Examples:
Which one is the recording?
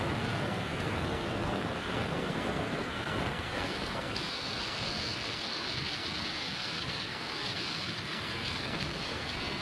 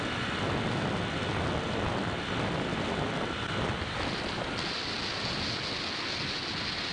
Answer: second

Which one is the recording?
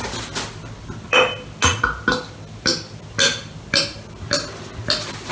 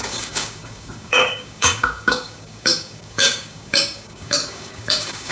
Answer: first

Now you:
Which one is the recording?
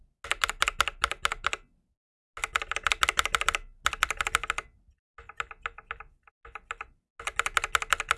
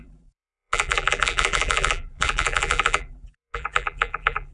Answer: first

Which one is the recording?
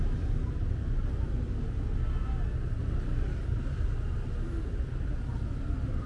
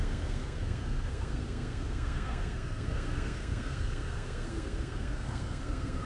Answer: first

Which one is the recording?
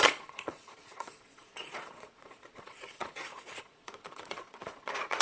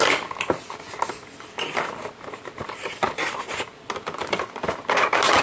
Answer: second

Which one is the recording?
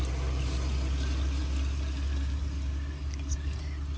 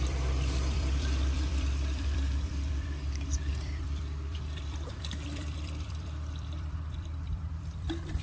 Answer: first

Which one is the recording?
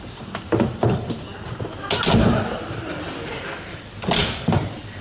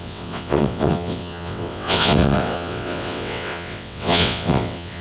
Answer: first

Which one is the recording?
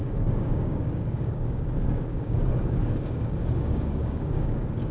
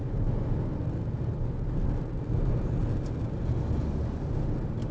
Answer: second